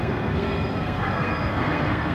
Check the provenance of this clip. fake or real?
fake